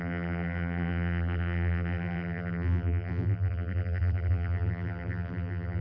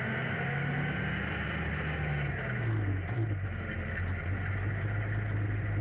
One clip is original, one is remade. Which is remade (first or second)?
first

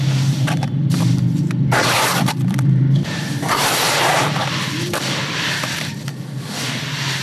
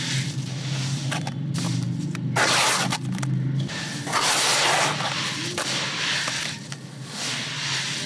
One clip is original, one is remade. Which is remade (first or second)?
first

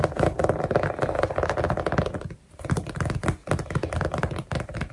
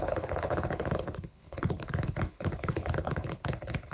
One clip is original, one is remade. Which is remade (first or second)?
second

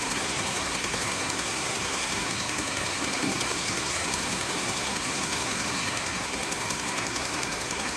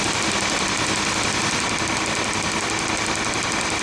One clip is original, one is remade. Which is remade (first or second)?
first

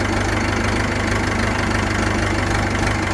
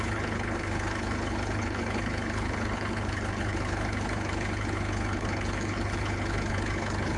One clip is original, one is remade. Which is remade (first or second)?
second